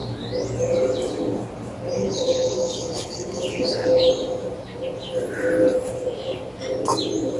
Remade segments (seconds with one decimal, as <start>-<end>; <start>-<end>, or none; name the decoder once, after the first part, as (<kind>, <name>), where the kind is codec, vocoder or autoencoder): 2.0-4.1 (codec, HILCodec)